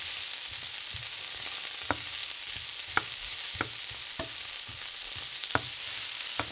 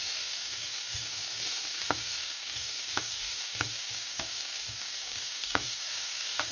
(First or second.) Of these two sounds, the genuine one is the first